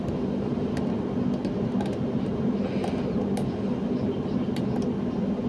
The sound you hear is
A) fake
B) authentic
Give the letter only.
B